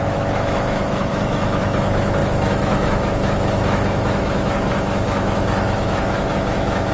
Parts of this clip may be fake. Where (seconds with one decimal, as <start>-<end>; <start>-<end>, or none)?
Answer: 0.0-6.9